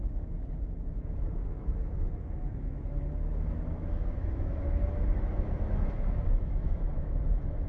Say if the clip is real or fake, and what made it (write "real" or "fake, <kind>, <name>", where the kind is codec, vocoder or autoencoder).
fake, autoencoder, DAC-VAE